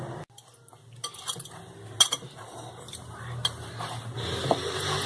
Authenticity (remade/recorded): recorded